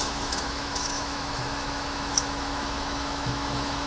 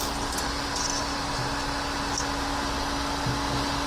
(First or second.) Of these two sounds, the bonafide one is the second